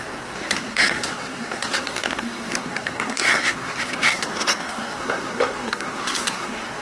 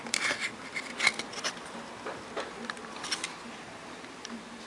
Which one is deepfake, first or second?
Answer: first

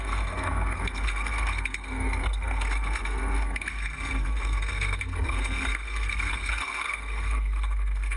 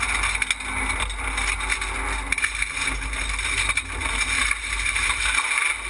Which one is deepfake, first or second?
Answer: first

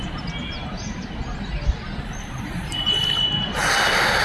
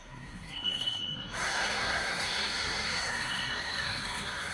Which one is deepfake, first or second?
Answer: second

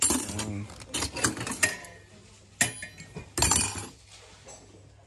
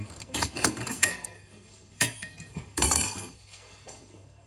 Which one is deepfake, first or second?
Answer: second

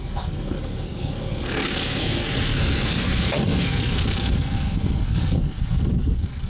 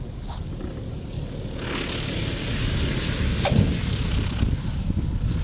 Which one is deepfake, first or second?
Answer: first